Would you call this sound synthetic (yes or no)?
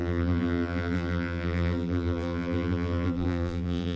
yes